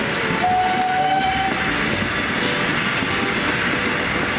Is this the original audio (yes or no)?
yes